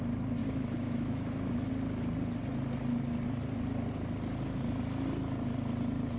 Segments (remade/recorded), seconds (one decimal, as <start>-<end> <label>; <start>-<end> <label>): 0.0-0.4 recorded; 0.4-1.7 remade; 1.7-6.2 recorded